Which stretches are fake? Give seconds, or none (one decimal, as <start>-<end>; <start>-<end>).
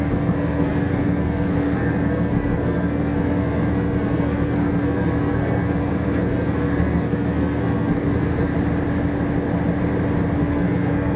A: 0.0-8.5; 10.4-11.2